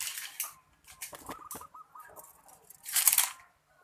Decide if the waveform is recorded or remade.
recorded